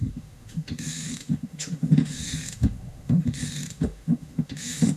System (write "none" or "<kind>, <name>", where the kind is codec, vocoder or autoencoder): autoencoder, DAC-VAE